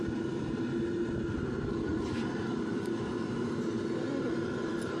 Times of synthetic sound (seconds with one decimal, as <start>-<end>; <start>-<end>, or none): 1.9-5.0